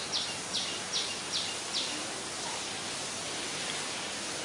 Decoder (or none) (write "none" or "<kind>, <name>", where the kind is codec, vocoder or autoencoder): none